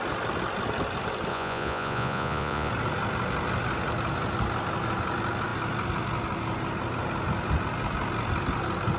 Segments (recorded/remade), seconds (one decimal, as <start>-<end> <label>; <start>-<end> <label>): 0.0-1.3 recorded; 1.3-2.7 remade; 2.7-9.0 recorded

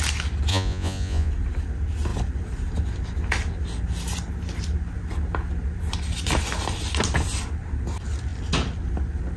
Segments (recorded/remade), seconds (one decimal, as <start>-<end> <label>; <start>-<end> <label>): 0.0-0.5 recorded; 0.5-1.3 remade; 1.3-9.4 recorded

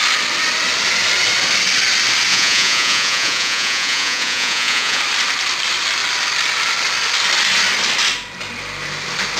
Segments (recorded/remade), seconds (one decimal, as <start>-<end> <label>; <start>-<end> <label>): 0.0-2.3 recorded; 2.3-5.0 remade; 5.0-9.4 recorded

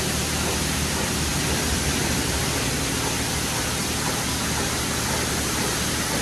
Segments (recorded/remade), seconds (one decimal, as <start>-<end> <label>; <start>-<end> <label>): 0.0-6.2 recorded

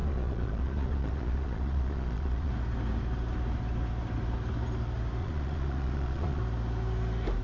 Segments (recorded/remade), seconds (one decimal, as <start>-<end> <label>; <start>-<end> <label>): 0.0-2.5 remade; 2.5-5.2 recorded; 5.2-6.4 remade; 6.4-7.4 recorded

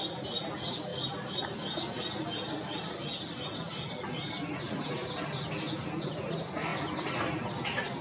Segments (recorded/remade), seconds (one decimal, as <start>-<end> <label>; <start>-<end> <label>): 0.0-8.0 recorded